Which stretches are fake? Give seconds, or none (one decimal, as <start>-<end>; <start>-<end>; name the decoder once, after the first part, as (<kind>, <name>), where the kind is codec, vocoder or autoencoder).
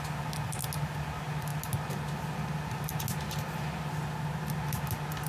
none